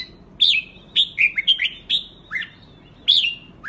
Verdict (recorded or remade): recorded